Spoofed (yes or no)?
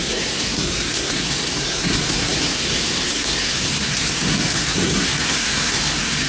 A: yes